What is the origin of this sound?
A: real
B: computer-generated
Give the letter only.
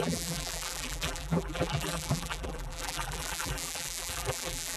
B